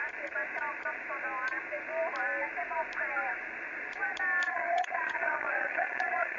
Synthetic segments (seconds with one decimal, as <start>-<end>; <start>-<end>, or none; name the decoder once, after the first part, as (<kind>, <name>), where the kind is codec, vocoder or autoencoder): 4.5-6.4 (vocoder, HiFi-GAN)